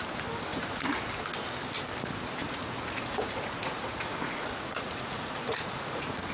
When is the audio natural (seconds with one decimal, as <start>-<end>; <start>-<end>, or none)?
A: 0.0-0.5; 1.2-2.4